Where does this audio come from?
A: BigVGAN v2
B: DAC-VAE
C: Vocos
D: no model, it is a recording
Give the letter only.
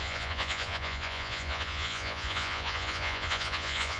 C